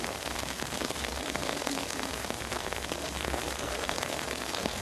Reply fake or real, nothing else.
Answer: fake